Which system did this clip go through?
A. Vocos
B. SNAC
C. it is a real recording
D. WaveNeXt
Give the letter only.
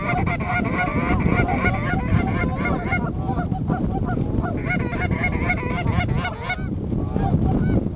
C